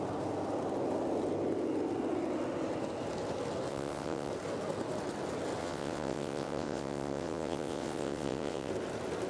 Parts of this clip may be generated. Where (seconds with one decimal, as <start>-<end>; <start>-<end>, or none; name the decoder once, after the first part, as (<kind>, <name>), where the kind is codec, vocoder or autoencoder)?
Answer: 3.7-4.3 (vocoder, WaveNeXt); 5.6-8.7